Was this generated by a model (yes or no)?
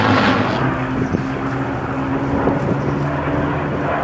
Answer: no